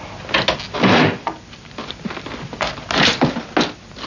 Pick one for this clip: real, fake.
real